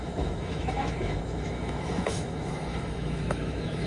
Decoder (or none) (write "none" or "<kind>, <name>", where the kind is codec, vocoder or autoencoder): autoencoder, DAC-VAE